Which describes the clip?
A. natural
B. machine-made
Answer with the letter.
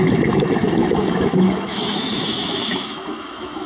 B